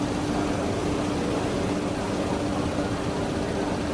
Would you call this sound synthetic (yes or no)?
no